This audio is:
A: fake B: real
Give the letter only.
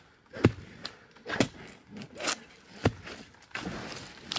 B